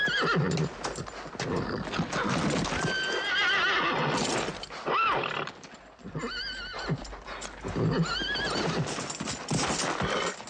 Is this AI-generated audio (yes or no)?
no